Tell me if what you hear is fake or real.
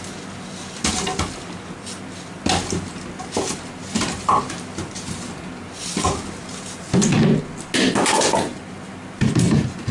real